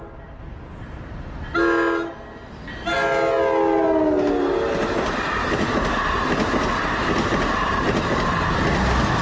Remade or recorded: recorded